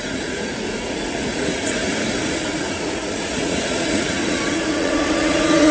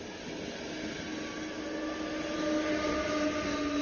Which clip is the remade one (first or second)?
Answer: first